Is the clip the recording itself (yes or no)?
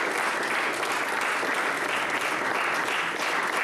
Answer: yes